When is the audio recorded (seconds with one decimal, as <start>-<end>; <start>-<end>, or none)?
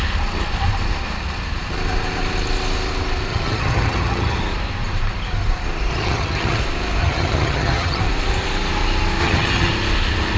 0.0-3.3; 4.4-5.9; 6.6-7.0; 8.0-9.2; 9.7-10.4